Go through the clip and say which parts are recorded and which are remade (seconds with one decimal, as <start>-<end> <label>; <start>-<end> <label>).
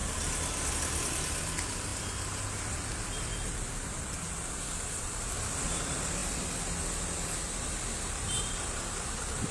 0.0-9.5 recorded